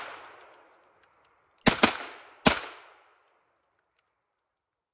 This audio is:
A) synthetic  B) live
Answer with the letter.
B